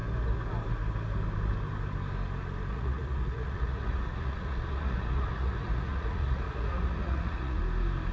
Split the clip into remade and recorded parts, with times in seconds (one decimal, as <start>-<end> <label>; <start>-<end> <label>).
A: 0.0-2.7 recorded; 2.7-7.6 remade; 7.6-8.1 recorded